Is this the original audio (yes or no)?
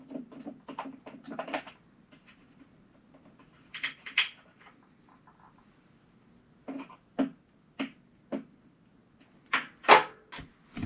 yes